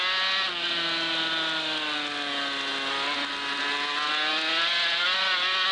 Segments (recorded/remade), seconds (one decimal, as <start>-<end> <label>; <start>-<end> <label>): 0.0-5.7 recorded